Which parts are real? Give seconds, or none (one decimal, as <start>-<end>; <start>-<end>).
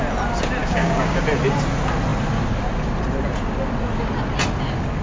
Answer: 0.0-0.6; 1.2-5.0